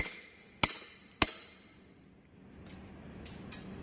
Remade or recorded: recorded